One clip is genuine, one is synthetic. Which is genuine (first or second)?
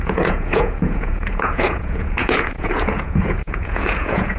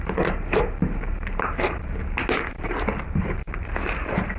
second